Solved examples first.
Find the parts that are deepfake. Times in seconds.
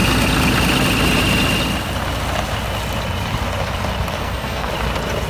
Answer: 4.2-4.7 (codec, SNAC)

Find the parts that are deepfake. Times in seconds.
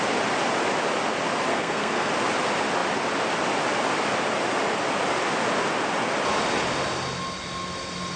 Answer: 1.5-2.1 (codec, SNAC)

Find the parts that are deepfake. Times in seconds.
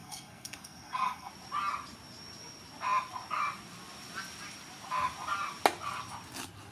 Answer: 0.0-1.3 (codec, SNAC)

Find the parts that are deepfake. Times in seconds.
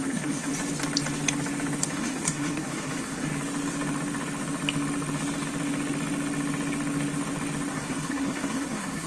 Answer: 0.0-0.5 (codec, SNAC); 1.8-3.3; 7.7-9.1